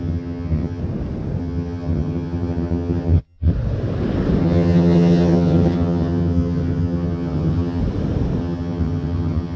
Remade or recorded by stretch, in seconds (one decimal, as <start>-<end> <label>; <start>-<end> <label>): 0.0-0.8 remade; 0.8-1.4 recorded; 1.4-3.5 remade; 3.5-4.4 recorded; 4.4-7.8 remade; 7.8-8.4 recorded; 8.4-9.6 remade